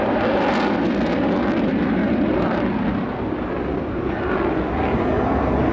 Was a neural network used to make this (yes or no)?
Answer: no